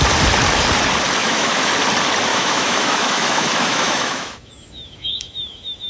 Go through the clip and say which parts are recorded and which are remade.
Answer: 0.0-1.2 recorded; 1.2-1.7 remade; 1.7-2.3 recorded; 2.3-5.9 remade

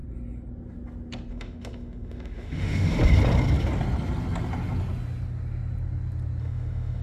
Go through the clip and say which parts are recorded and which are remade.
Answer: 0.0-1.3 recorded; 1.3-3.0 remade; 3.0-6.4 recorded; 6.4-7.0 remade

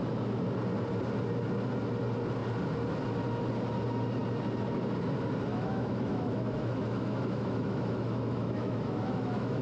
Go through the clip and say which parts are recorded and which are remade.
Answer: 0.0-5.5 recorded; 5.5-9.6 remade

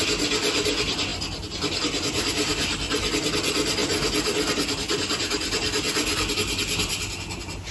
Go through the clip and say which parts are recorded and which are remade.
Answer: 0.0-7.7 recorded

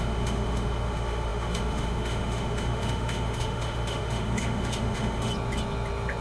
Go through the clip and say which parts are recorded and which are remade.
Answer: 0.0-5.3 remade; 5.3-6.2 recorded

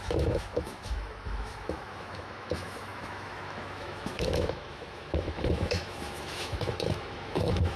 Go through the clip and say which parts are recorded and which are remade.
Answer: 0.0-7.8 remade